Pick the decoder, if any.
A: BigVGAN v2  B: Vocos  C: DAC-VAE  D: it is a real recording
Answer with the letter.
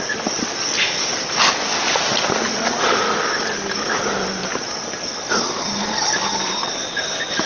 D